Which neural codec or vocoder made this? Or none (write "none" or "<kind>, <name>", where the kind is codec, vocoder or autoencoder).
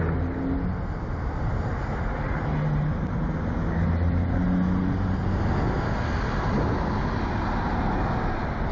none